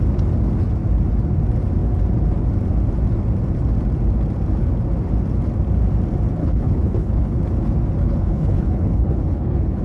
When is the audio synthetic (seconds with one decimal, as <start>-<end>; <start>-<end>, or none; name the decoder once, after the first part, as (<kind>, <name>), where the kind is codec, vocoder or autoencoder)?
6.4-7.4 (codec, HILCodec); 8.0-9.8